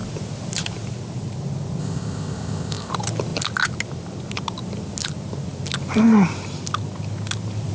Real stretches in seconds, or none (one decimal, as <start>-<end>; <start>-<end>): 0.0-1.8; 2.9-7.7